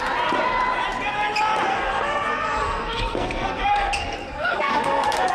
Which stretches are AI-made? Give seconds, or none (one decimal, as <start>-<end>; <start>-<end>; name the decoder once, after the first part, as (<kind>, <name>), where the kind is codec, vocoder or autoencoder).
1.7-5.3 (codec, SNAC)